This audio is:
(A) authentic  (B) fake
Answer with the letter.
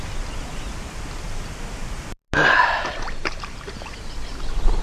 A